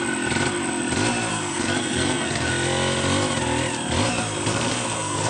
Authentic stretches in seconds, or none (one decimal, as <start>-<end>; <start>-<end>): 0.0-1.3; 2.5-4.5